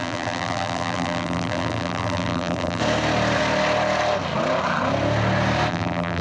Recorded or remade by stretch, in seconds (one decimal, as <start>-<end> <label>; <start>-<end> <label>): 0.0-2.8 remade; 2.8-5.7 recorded; 5.7-6.2 remade